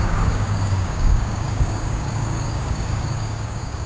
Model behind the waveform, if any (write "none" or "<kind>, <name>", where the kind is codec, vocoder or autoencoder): codec, DAC